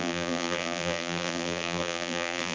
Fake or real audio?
fake